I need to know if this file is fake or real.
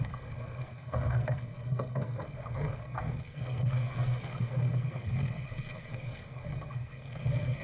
fake